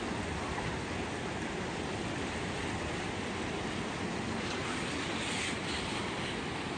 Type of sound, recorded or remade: recorded